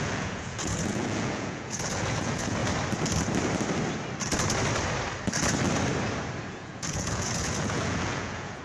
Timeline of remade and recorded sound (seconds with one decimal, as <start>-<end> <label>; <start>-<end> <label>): 0.0-2.6 remade; 2.6-6.5 recorded; 6.5-8.6 remade